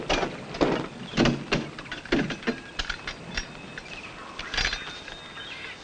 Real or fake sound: real